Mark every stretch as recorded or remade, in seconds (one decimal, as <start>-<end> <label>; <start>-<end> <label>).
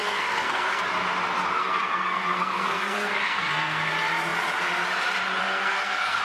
0.0-0.8 remade; 0.8-1.6 recorded; 1.6-3.9 remade; 3.9-5.4 recorded; 5.4-6.2 remade